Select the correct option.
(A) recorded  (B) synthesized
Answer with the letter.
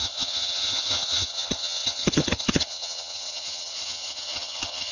B